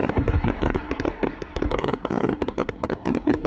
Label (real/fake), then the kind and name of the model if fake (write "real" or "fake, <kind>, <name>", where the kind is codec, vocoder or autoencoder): fake, codec, SNAC